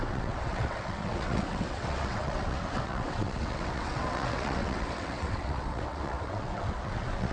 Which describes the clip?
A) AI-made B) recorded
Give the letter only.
A